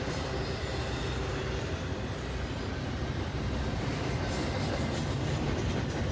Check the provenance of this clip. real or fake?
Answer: real